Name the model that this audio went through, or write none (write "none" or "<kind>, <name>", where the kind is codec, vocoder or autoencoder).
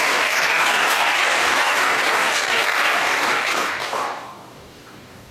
codec, DAC